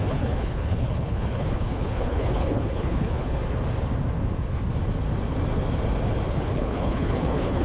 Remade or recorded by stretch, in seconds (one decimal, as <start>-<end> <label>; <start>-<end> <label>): 0.0-3.4 remade; 3.4-6.3 recorded; 6.3-7.6 remade